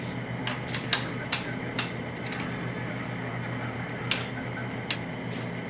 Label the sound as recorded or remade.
recorded